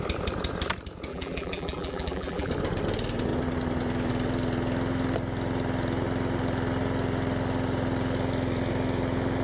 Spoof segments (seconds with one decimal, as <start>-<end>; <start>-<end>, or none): 1.1-2.5